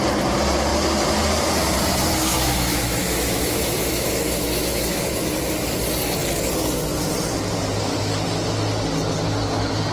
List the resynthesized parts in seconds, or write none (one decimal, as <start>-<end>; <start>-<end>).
2.3-5.3

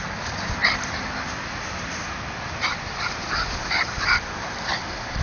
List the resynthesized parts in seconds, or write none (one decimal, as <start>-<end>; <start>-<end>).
none

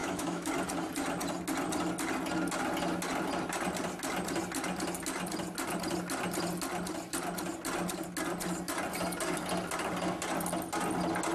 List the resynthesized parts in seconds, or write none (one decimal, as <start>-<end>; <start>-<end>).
0.0-0.5

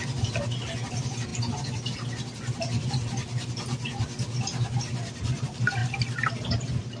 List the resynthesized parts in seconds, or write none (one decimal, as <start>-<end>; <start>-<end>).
none

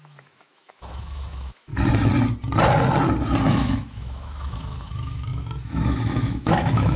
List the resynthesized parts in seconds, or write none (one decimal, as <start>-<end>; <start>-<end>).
0.0-1.7; 3.5-7.0

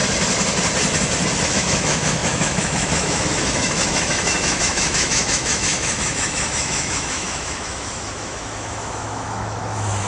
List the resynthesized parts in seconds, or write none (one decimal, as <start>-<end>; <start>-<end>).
1.5-10.1

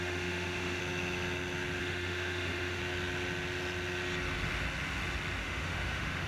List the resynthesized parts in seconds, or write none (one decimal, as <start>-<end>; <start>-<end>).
0.0-0.8; 1.8-2.8; 5.4-6.3

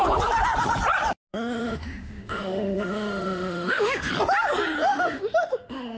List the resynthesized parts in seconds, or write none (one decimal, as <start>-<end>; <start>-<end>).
1.3-4.1; 4.9-6.0